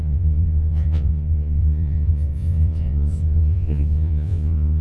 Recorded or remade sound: remade